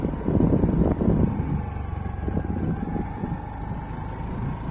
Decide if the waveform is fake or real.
real